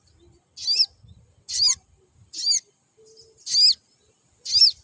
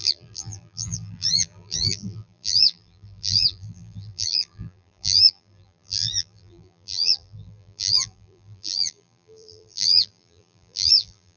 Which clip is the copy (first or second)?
second